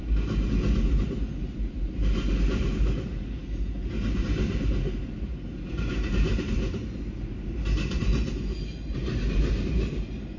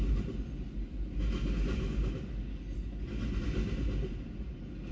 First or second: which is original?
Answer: second